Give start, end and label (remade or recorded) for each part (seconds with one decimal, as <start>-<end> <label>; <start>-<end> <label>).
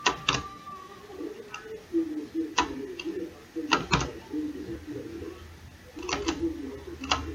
0.0-0.5 recorded; 0.5-1.0 remade; 1.0-7.3 recorded